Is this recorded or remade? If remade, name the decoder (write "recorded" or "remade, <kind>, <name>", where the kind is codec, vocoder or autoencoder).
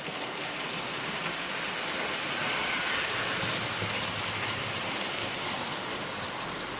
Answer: recorded